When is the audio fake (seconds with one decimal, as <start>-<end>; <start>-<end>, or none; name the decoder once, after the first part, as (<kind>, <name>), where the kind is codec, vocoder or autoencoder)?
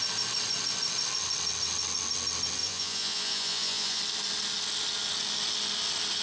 2.6-4.0 (vocoder, Vocos)